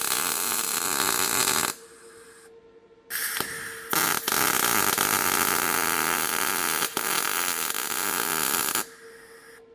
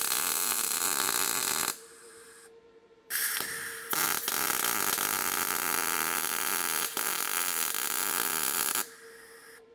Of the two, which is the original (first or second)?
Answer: first